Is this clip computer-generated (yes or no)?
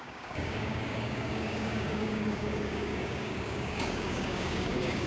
yes